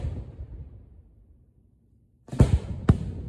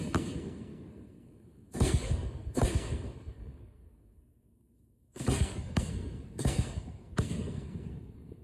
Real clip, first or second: first